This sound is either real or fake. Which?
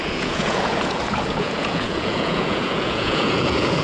fake